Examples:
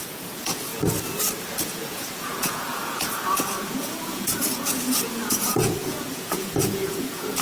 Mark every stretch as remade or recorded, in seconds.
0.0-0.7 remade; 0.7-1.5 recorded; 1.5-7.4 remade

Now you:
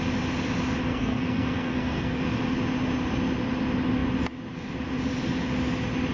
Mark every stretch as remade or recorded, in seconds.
0.0-0.9 recorded; 0.9-2.2 remade; 2.2-6.1 recorded

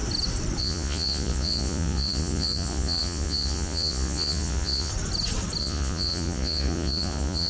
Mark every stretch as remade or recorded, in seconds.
0.0-0.6 recorded; 0.6-4.9 remade; 4.9-5.6 recorded; 5.6-7.5 remade

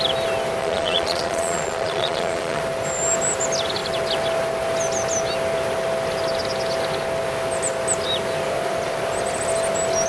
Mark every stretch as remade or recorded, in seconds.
0.0-0.6 recorded; 0.6-2.6 remade; 2.6-10.1 recorded

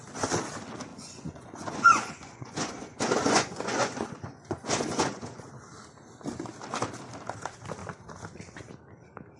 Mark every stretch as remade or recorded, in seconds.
0.0-0.9 recorded; 0.9-5.5 remade; 5.5-9.4 recorded